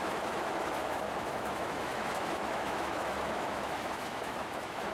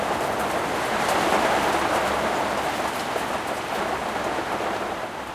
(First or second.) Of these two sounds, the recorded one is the second